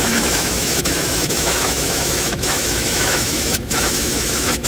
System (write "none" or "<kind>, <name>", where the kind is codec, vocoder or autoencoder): autoencoder, DAC-VAE